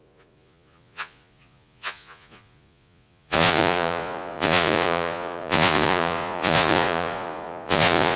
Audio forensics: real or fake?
fake